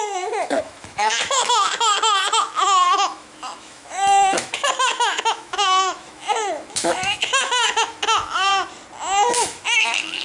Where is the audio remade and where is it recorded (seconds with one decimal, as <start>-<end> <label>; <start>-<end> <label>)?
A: 0.0-8.5 remade; 8.5-9.3 recorded; 9.3-10.2 remade